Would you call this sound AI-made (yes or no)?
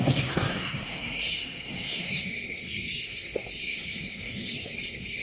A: yes